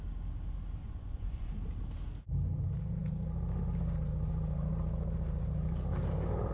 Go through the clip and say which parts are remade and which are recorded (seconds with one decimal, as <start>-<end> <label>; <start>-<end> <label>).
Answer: 0.0-0.8 recorded; 0.8-1.5 remade; 1.5-6.5 recorded